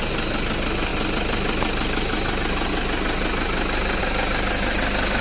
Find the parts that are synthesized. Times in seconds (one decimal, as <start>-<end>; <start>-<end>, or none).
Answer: none